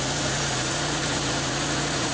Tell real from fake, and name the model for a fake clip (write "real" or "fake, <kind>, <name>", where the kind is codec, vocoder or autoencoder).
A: fake, vocoder, Vocos